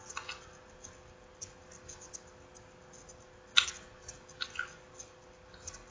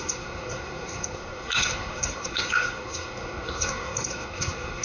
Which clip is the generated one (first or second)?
second